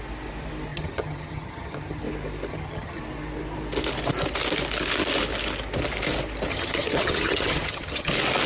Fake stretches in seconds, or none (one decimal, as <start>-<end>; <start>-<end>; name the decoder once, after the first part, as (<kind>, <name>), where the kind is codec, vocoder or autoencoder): 0.7-2.0 (vocoder, HiFi-GAN); 2.5-3.0; 6.5-8.1